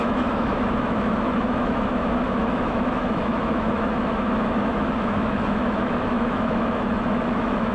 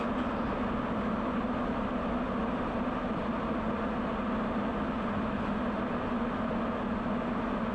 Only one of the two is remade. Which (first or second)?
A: first